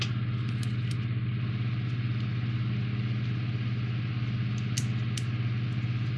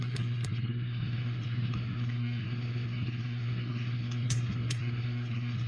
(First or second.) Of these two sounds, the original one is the first